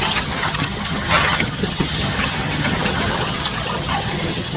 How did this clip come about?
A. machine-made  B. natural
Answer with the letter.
A